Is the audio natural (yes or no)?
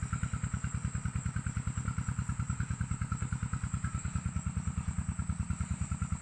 yes